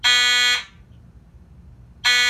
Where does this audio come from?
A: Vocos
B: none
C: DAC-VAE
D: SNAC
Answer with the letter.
B